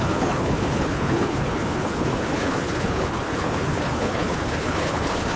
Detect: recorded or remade remade